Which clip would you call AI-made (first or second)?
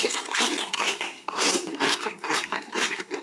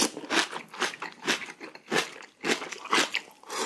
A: first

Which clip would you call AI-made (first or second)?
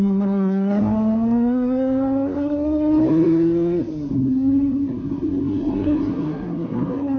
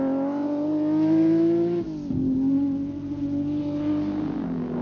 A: first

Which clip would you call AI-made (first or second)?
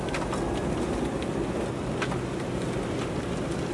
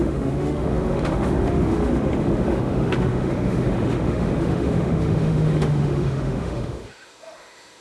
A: second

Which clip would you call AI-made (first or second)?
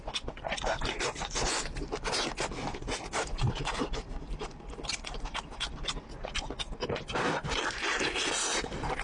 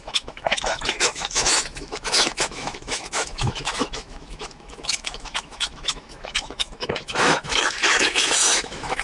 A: second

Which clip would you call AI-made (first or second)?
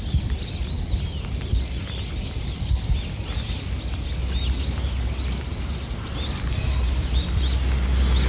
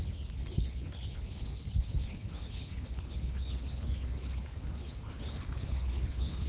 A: second